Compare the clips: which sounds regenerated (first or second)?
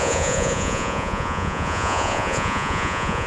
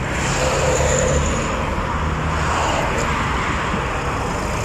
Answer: first